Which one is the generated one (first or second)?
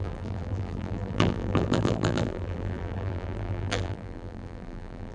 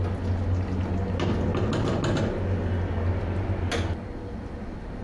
first